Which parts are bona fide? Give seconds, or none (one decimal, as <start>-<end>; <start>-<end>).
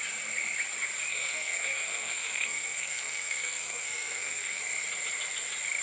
0.0-1.1; 4.6-5.8